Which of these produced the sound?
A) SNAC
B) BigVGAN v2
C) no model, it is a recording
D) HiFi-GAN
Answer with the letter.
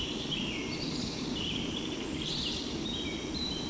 B